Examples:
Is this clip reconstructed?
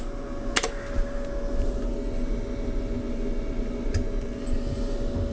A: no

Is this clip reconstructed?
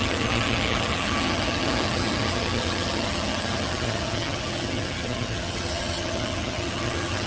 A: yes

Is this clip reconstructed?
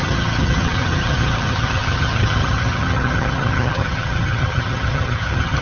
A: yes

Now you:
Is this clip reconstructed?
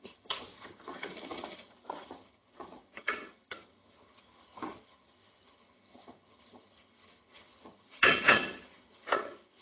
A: yes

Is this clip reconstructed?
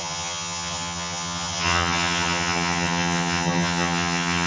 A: yes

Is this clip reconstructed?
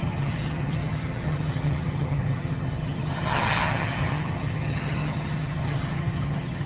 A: yes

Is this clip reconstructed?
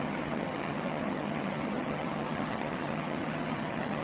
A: yes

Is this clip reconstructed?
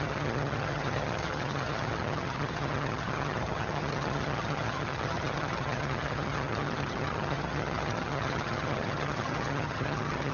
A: yes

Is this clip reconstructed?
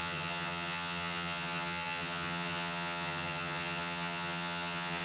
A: yes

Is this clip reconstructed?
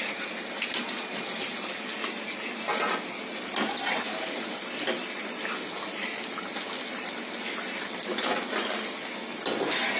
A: no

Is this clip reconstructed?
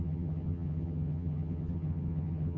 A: yes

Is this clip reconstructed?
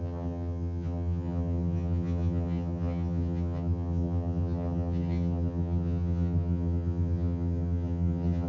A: yes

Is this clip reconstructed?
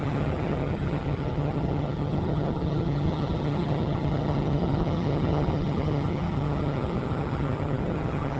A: yes